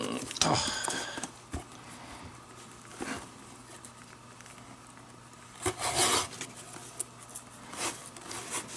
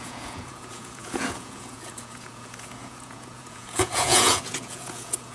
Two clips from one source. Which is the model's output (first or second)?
second